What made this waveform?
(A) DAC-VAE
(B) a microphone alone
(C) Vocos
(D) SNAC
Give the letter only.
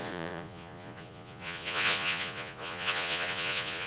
C